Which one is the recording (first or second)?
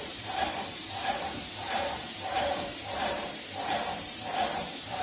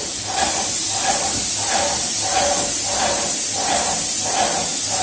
second